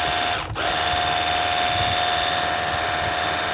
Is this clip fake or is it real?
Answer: real